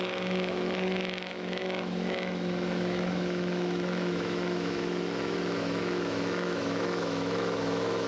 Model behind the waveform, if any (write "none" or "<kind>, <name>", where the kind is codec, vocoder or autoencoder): autoencoder, DAC-VAE